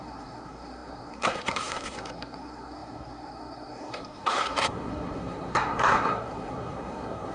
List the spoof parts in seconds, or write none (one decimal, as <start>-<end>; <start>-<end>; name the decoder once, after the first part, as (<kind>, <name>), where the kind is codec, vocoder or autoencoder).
0.0-7.3 (codec, SNAC)